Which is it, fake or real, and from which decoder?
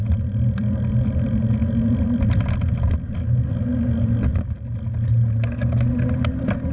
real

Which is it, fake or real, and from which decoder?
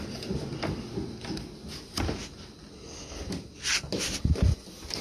real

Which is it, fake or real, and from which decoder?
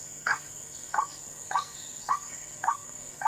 fake, codec, SNAC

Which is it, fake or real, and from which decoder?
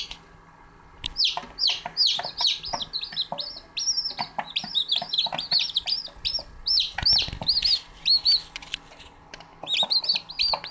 real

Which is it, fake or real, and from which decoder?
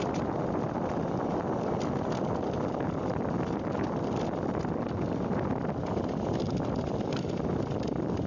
real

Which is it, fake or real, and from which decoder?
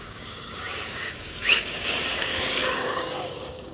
fake, codec, DAC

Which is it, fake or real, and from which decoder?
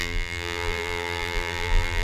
fake, vocoder, BigVGAN v2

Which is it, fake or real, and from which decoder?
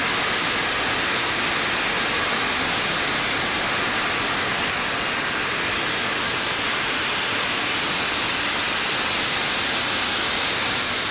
real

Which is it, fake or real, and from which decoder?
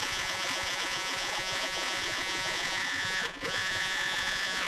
fake, vocoder, Vocos